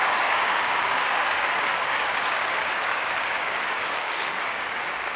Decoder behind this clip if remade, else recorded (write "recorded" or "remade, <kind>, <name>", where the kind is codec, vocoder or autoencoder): remade, codec, DAC